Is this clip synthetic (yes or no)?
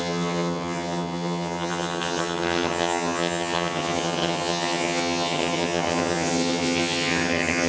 yes